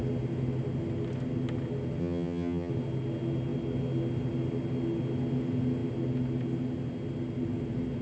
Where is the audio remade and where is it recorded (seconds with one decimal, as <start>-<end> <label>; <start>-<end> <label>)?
0.0-2.0 recorded; 2.0-2.7 remade; 2.7-8.0 recorded